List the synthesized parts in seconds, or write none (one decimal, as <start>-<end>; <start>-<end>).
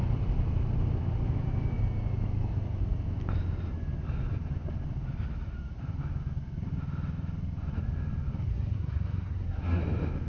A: 8.5-9.8